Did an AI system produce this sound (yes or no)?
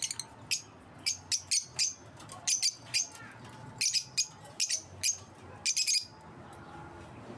no